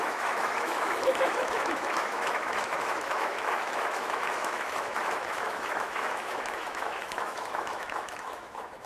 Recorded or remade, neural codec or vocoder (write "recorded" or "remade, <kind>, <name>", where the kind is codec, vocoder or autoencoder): remade, autoencoder, DAC-VAE